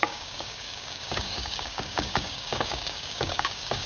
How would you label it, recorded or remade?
remade